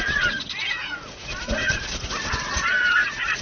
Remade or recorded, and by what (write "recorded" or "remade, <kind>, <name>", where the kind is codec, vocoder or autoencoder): remade, vocoder, Vocos